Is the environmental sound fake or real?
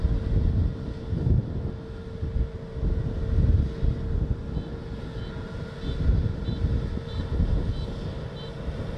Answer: real